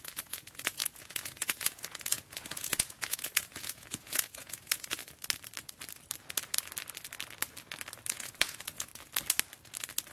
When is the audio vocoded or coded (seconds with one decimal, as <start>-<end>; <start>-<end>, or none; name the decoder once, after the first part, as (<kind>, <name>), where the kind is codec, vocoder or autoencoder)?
0.0-5.0 (vocoder, Vocos); 8.1-8.9